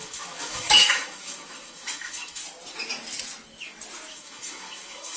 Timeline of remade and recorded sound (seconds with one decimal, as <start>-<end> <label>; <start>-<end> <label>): 0.0-2.4 remade; 2.4-4.1 recorded; 4.1-5.2 remade